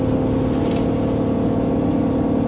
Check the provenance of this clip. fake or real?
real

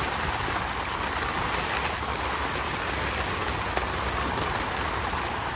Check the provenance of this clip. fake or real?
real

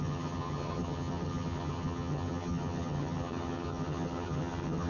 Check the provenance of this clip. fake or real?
fake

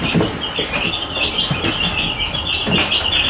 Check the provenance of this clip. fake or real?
real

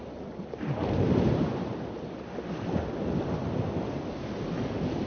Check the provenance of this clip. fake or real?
real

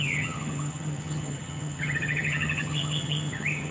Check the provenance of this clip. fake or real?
fake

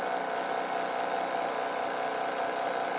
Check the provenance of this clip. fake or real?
real